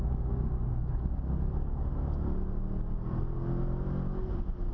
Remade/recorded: recorded